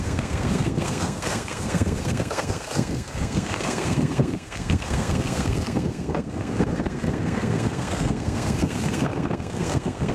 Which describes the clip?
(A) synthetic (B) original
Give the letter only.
A